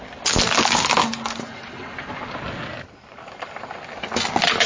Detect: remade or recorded recorded